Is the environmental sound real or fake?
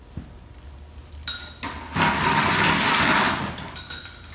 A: real